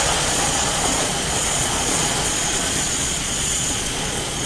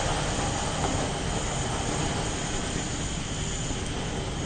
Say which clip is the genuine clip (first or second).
second